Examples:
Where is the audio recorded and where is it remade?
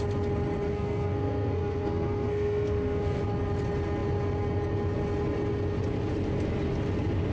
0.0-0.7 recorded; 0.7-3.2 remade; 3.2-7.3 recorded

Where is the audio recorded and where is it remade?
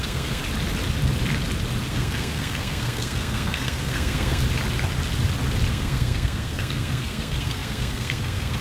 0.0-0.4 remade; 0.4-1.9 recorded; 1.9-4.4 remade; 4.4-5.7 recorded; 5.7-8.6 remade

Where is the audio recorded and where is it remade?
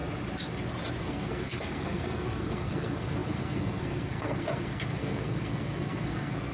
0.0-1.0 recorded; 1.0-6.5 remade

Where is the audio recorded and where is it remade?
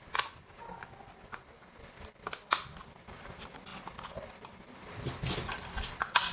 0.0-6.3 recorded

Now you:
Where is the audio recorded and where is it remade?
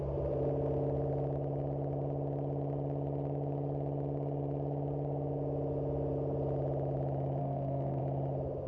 0.0-7.4 recorded; 7.4-8.0 remade; 8.0-8.7 recorded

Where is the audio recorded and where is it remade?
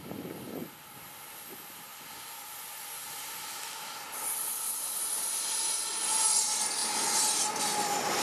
0.0-8.2 recorded